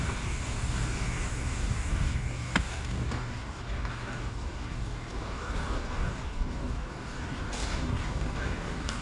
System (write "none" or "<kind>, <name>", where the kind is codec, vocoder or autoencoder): codec, DAC